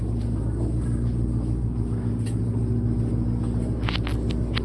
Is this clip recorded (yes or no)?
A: yes